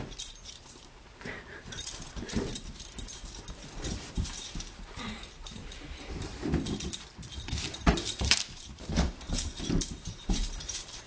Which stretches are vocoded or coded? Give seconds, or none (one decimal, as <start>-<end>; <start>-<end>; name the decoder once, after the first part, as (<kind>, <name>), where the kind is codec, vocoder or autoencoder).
0.0-6.3 (vocoder, BigVGAN v2); 7.5-11.1